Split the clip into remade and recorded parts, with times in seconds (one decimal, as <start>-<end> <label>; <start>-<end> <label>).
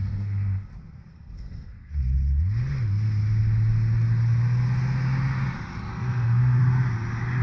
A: 0.0-0.7 remade; 0.7-1.1 recorded; 1.1-1.9 remade; 1.9-5.9 recorded; 5.9-6.6 remade; 6.6-7.4 recorded